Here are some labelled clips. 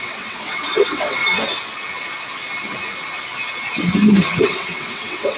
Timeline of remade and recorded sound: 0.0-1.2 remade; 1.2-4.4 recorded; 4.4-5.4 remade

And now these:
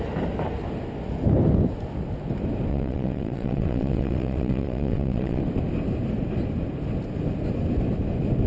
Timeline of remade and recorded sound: 0.0-2.7 recorded; 2.7-5.4 remade; 5.4-8.5 recorded